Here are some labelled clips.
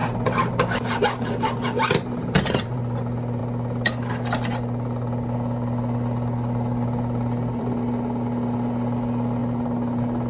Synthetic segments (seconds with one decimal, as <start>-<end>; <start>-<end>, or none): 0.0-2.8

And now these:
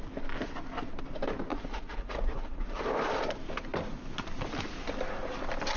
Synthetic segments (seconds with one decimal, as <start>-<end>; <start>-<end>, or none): 1.5-2.8

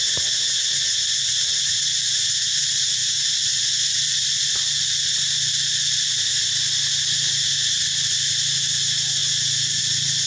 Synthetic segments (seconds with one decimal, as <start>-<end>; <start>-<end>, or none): none

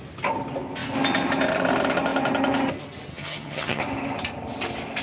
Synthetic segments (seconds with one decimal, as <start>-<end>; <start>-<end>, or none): 3.1-3.8

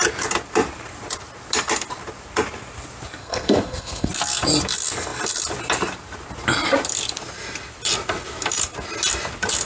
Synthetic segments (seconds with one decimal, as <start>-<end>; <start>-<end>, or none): 3.2-4.1

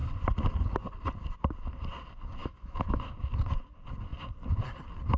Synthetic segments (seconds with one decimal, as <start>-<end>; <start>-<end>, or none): 2.4-3.3

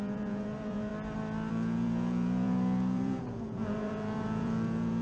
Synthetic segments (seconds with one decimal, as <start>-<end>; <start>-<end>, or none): 0.0-0.9; 1.5-5.0

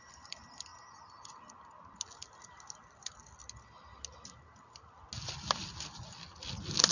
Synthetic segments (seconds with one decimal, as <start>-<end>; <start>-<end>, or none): none